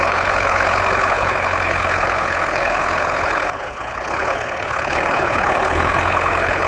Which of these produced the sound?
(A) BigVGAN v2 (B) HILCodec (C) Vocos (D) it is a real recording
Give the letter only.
B